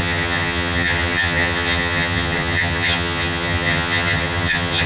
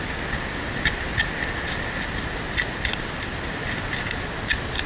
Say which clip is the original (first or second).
second